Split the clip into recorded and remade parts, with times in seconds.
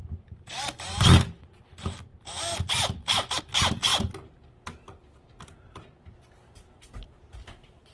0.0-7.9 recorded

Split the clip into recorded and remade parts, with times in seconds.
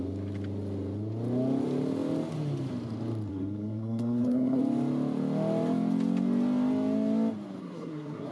0.0-3.3 recorded; 3.3-4.6 remade; 4.6-7.6 recorded; 7.6-8.3 remade